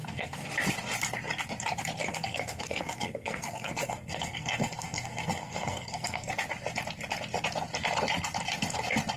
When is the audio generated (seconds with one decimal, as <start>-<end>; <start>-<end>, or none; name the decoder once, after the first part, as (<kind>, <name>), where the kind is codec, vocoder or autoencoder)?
0.0-0.5 (codec, SNAC); 2.1-6.3